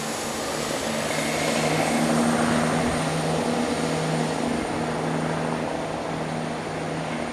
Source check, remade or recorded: recorded